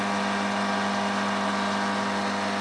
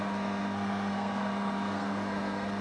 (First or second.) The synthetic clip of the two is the second